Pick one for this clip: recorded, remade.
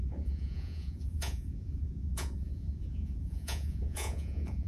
remade